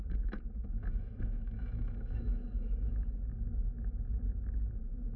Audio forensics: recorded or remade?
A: remade